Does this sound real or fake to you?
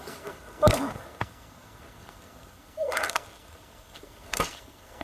fake